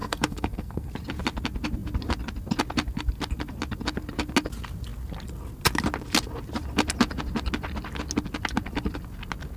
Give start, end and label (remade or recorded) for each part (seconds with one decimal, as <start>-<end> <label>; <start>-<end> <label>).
0.0-0.9 remade; 0.9-9.6 recorded